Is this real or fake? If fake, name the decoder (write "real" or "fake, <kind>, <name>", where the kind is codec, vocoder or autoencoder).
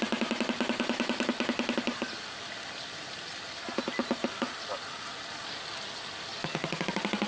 real